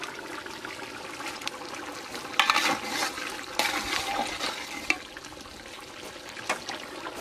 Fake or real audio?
real